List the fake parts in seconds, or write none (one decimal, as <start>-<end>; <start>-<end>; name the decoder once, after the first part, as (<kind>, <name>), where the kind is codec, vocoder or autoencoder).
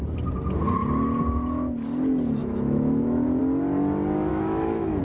2.4-3.4 (autoencoder, DAC-VAE); 4.3-5.0